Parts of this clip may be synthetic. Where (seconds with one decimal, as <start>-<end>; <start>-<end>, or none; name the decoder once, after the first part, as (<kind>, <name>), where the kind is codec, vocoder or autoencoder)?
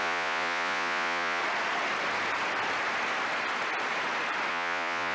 0.0-1.4 (vocoder, Vocos); 4.5-5.1